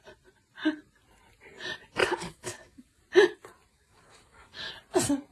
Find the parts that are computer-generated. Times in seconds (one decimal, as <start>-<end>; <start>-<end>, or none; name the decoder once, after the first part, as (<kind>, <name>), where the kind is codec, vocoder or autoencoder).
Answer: 2.0-3.0 (codec, DAC); 3.7-4.7